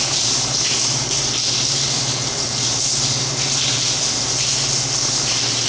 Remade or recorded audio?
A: recorded